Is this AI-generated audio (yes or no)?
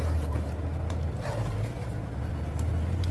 no